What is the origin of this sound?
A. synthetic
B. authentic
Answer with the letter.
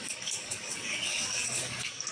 A